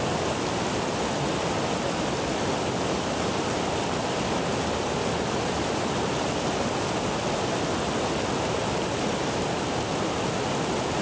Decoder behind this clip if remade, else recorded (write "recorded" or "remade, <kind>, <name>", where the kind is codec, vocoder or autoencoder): recorded